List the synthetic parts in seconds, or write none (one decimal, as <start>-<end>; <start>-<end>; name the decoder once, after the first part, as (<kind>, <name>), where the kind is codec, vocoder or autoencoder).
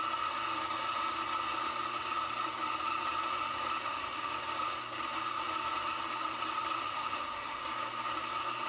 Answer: 3.8-4.3 (autoencoder, DAC-VAE); 6.8-7.6